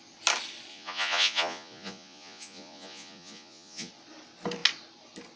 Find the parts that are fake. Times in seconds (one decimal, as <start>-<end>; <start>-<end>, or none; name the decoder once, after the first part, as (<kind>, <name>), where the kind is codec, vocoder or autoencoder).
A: 0.7-3.9 (vocoder, Vocos)